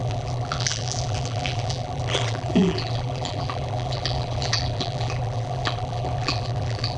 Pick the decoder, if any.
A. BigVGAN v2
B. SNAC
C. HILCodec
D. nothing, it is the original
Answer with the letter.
A